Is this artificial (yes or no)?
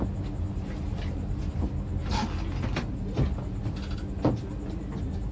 no